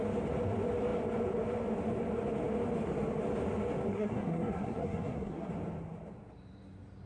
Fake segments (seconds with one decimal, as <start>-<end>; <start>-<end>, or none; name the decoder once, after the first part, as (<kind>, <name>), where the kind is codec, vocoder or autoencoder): 3.9-5.5 (codec, SNAC)